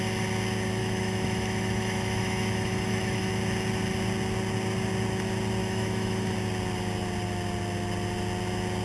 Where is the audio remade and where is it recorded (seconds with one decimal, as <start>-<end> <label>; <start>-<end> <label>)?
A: 0.0-0.8 recorded; 0.8-3.3 remade; 3.3-5.6 recorded; 5.6-6.3 remade; 6.3-8.8 recorded